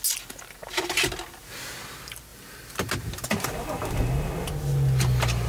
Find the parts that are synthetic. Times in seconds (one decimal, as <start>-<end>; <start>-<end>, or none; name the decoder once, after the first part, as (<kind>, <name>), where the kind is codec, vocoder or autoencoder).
none